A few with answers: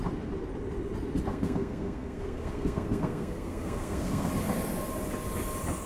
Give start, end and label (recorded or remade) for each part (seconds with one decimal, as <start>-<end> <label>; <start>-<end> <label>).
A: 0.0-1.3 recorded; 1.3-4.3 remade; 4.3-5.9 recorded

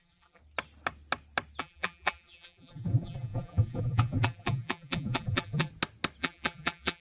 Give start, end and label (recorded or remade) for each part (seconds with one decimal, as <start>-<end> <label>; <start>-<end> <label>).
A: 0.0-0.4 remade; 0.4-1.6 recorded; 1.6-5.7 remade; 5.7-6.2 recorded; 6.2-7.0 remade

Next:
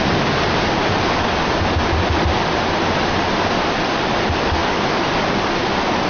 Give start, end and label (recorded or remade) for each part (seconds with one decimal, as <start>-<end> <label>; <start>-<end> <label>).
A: 0.0-6.1 recorded